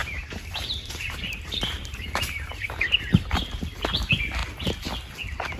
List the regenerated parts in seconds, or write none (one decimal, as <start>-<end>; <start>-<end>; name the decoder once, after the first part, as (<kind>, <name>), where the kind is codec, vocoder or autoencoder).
0.0-3.4 (vocoder, BigVGAN v2)